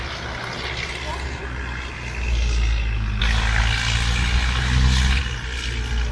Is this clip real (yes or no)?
yes